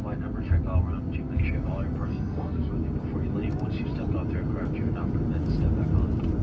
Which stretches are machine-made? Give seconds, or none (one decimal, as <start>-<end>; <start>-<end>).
2.1-2.7